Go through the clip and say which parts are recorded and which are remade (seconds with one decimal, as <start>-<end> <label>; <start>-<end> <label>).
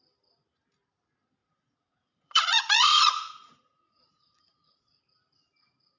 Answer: 0.0-1.4 recorded; 1.4-5.0 remade; 5.0-6.0 recorded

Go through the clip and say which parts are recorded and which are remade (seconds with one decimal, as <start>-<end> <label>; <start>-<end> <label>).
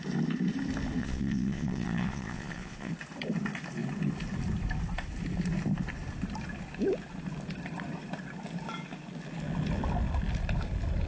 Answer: 0.0-1.0 recorded; 1.0-2.9 remade; 2.9-11.1 recorded